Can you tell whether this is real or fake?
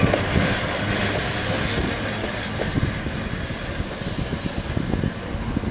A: real